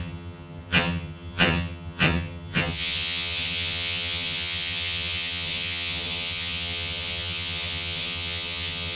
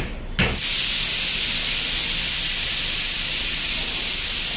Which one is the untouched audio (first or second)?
second